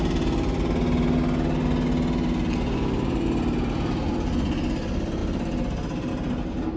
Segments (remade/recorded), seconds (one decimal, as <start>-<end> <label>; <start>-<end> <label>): 0.0-6.8 recorded